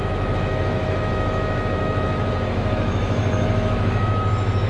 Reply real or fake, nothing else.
fake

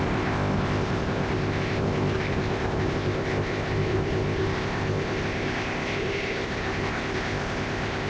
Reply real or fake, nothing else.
fake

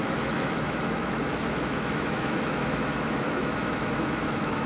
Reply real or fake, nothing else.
fake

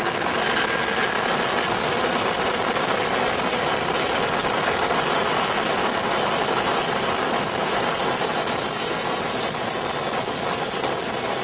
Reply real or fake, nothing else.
real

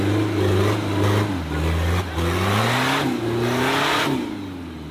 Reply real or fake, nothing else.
real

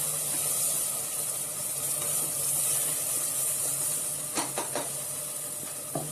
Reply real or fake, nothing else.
real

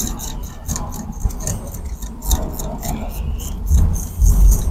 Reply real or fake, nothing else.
real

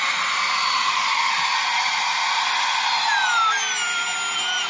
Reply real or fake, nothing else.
real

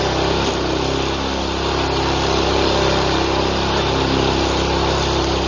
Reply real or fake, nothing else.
real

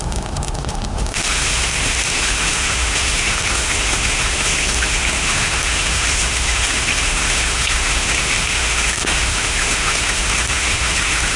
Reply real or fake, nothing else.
fake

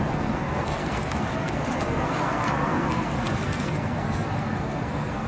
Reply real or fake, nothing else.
fake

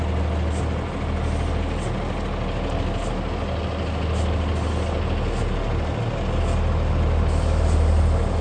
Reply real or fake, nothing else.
real